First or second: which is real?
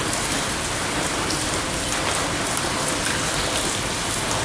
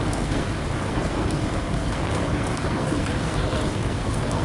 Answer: first